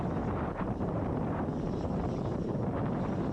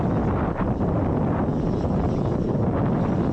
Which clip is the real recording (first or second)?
second